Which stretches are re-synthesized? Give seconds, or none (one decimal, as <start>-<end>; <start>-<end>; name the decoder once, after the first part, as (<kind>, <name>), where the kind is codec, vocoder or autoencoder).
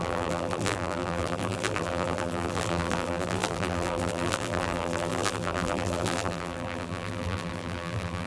0.0-8.3 (vocoder, BigVGAN v2)